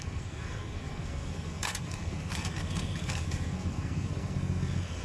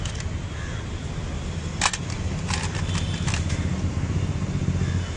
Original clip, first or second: second